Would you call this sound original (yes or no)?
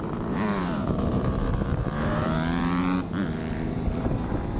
no